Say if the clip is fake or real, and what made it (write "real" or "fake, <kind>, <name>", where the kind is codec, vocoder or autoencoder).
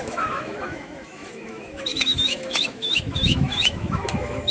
fake, autoencoder, DAC-VAE